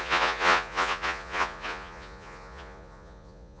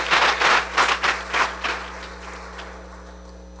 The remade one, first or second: first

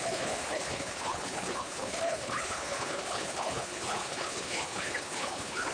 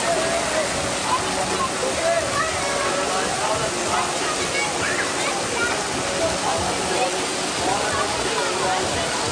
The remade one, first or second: first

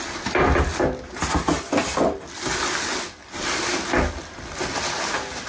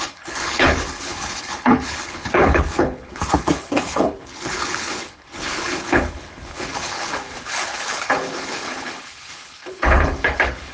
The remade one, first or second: second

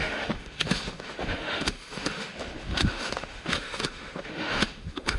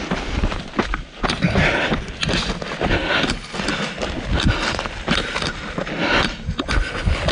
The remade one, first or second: first